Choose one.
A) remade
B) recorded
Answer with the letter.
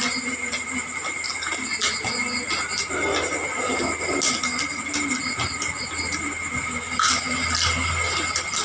B